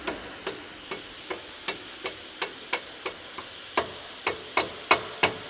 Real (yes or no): yes